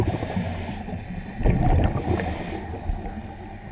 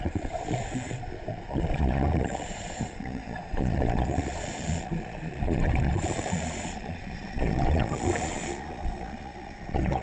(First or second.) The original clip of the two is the first